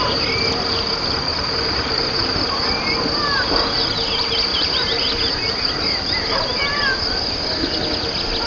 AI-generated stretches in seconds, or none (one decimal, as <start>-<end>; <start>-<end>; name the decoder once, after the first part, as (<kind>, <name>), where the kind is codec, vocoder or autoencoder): 1.3-2.5 (vocoder, BigVGAN v2); 4.5-5.5